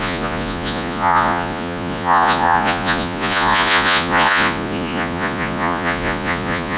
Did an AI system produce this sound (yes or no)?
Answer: yes